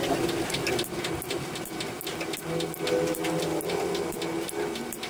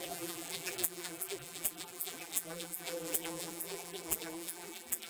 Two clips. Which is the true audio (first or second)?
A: first